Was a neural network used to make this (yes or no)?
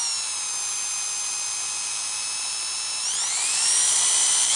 no